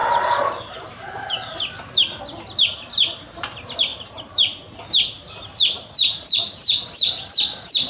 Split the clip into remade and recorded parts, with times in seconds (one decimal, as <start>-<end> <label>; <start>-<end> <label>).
0.0-1.6 remade; 1.6-7.9 recorded